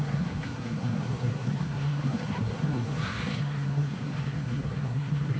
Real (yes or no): no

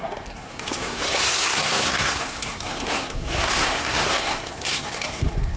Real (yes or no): no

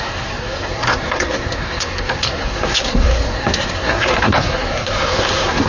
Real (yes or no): no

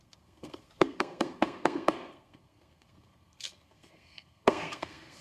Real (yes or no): no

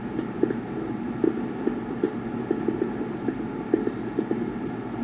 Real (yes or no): yes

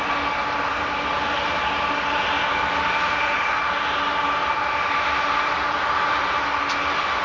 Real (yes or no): yes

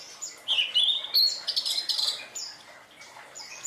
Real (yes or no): yes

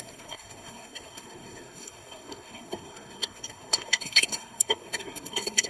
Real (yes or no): no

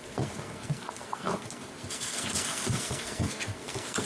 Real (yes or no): no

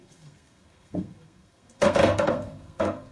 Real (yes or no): no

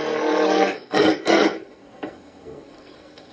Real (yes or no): no